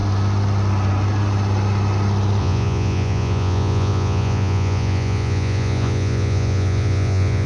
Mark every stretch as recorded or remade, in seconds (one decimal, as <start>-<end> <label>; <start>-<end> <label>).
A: 0.0-2.4 recorded; 2.4-7.5 remade